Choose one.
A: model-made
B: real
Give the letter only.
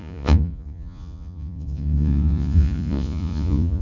A